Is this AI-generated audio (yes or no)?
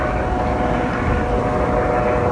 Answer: no